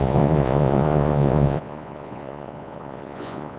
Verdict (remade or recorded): remade